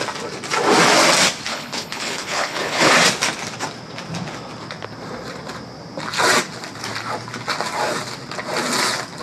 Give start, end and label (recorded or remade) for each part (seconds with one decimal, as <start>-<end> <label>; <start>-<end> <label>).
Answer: 0.0-1.5 recorded; 1.5-2.9 remade; 2.9-9.2 recorded